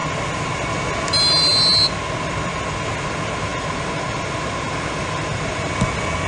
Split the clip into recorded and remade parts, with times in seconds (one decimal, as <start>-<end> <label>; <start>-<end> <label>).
0.0-6.3 recorded